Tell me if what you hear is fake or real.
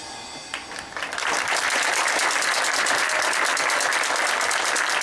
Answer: real